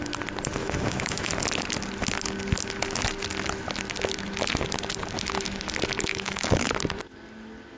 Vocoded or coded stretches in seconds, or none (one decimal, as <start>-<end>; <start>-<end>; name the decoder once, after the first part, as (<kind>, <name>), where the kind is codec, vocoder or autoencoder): 0.6-1.3 (autoencoder, DAC-VAE); 6.1-6.7